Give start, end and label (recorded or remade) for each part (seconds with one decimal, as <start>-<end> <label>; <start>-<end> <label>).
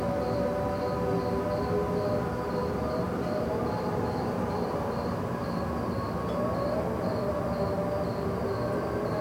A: 0.0-2.6 recorded; 2.6-5.6 remade; 5.6-9.2 recorded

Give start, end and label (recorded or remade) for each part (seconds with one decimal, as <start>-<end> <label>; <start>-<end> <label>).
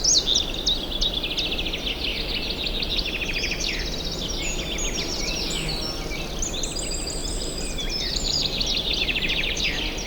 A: 0.0-7.2 recorded; 7.2-9.7 remade; 9.7-10.1 recorded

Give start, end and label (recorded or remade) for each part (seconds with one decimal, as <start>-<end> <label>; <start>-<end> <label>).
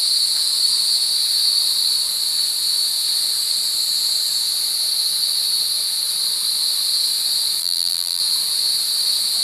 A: 0.0-7.6 recorded; 7.6-8.2 remade; 8.2-9.4 recorded